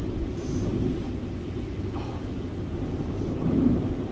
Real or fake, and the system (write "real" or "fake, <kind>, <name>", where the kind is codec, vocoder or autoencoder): real